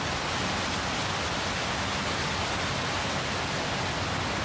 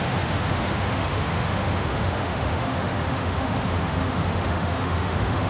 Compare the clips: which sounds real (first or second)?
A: first